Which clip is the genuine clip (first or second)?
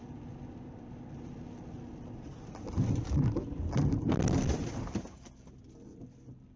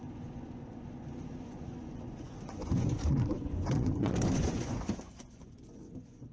first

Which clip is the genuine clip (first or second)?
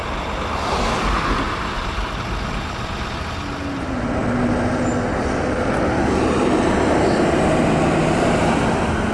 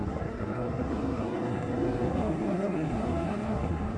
first